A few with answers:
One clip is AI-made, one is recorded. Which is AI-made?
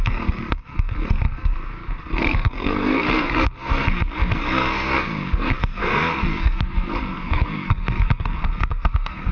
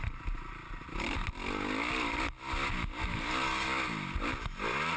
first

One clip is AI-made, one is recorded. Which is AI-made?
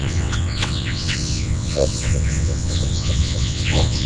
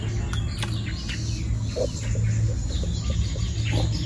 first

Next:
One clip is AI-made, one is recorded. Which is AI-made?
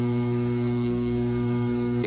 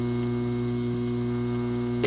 first